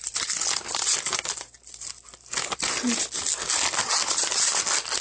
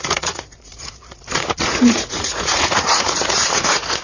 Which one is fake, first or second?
second